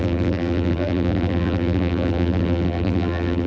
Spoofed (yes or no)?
yes